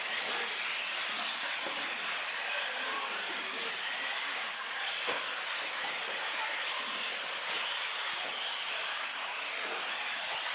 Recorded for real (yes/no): yes